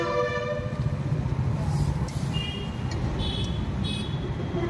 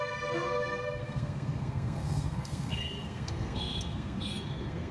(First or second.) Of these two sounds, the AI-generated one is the second